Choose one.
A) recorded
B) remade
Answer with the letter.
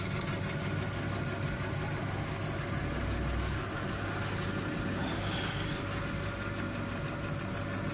A